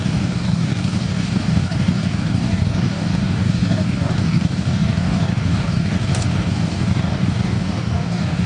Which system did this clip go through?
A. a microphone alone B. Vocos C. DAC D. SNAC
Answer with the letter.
C